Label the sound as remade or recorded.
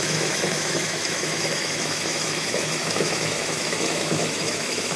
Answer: remade